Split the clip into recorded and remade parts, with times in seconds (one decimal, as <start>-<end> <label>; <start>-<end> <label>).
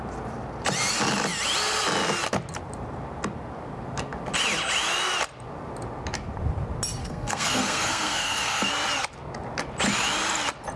0.0-7.0 recorded; 7.0-8.7 remade; 8.7-10.8 recorded